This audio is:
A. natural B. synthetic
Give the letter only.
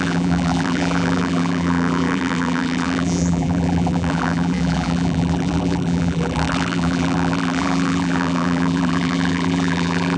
B